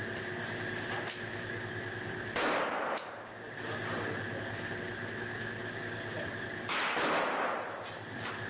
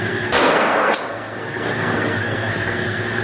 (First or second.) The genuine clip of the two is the first